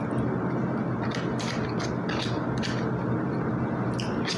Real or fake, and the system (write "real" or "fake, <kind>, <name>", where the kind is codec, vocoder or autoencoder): real